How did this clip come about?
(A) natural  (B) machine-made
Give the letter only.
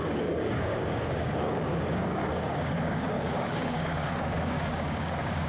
B